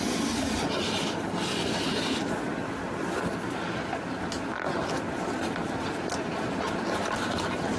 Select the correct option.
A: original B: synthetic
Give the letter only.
A